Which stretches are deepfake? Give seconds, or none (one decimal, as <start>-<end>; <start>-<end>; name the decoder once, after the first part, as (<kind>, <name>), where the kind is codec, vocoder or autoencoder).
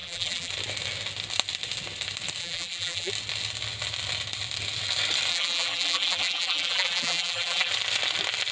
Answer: 0.0-0.5 (vocoder, BigVGAN v2); 2.4-3.1; 5.3-7.7